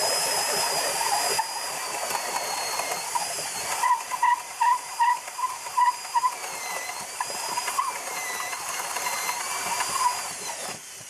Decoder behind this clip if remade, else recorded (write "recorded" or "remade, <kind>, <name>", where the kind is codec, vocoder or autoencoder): remade, vocoder, BigVGAN v2